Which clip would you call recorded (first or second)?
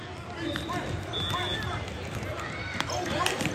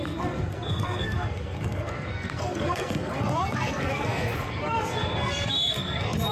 first